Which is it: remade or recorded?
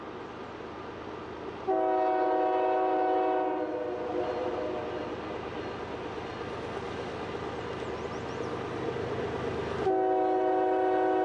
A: recorded